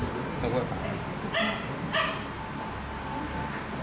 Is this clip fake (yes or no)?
no